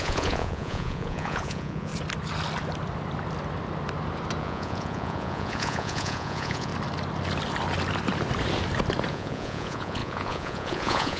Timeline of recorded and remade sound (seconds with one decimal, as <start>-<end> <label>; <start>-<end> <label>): 0.0-1.9 remade; 1.9-4.4 recorded; 4.4-6.7 remade; 6.7-9.1 recorded; 9.1-11.2 remade